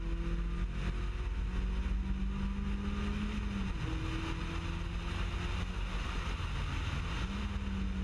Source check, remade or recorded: recorded